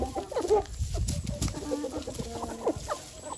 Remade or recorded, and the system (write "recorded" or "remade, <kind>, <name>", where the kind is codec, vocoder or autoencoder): recorded